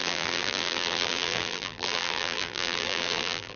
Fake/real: fake